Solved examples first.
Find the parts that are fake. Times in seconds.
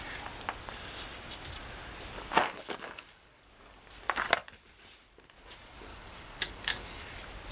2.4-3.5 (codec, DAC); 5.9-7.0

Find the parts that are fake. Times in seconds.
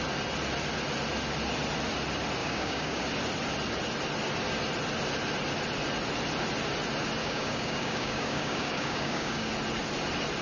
2.4-3.0 (codec, DAC); 7.2-9.5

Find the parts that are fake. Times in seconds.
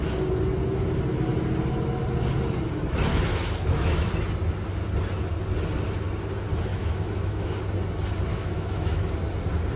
3.1-4.1 (autoencoder, DAC-VAE); 6.7-7.5; 8.3-9.1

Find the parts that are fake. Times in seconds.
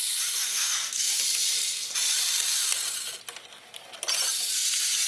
0.5-1.2 (codec, SNAC)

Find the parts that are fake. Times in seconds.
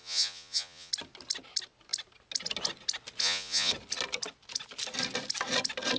0.0-0.9 (vocoder, Vocos); 3.2-3.7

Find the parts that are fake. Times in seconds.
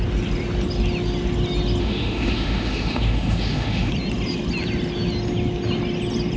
1.8-3.9 (autoencoder, DAC-VAE)